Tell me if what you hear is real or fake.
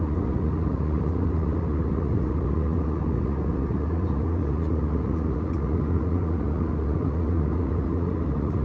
fake